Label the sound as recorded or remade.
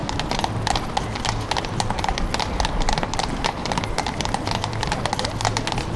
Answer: recorded